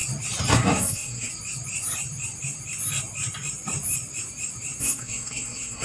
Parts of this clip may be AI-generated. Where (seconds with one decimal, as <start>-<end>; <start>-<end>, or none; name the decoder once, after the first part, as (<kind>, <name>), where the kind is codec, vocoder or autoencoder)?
0.5-1.3 (codec, SNAC); 4.8-5.8